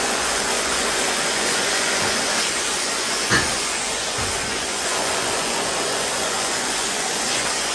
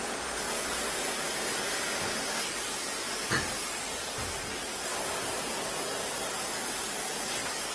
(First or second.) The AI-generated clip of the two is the first